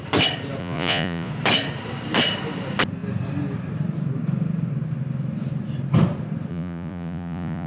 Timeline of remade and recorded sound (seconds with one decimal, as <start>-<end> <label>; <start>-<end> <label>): 0.0-0.6 recorded; 0.6-1.3 remade; 1.3-6.5 recorded; 6.5-7.7 remade